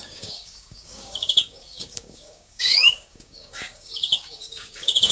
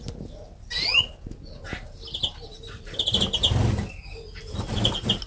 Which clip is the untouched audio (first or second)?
second